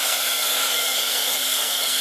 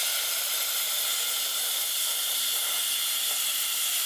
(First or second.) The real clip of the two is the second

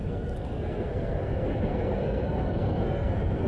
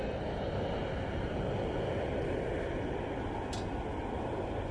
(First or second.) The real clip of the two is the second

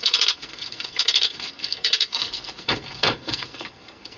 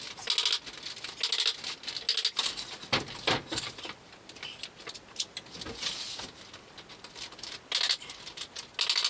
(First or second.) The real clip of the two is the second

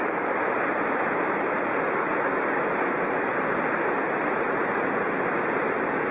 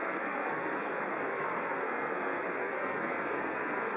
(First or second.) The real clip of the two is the first